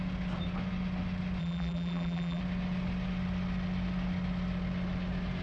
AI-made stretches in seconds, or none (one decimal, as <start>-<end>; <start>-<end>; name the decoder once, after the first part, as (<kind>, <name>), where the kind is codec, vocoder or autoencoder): 1.4-2.4 (vocoder, BigVGAN v2)